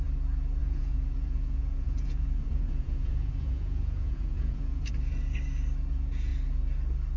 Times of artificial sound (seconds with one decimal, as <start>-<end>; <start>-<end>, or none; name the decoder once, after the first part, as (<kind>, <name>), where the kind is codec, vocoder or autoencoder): 0.6-4.9 (vocoder, Vocos)